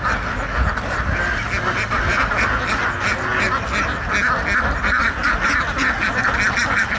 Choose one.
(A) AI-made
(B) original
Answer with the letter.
B